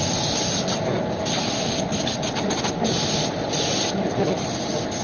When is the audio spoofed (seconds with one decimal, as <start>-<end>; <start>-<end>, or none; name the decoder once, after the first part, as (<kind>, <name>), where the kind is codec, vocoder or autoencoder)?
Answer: none